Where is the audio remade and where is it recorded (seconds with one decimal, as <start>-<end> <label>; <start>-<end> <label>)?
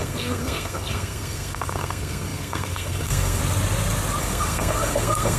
0.0-3.4 remade; 3.4-4.2 recorded; 4.2-5.4 remade